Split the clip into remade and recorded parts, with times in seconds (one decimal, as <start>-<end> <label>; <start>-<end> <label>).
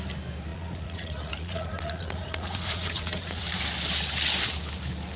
0.0-0.5 recorded; 0.5-3.6 remade; 3.6-5.2 recorded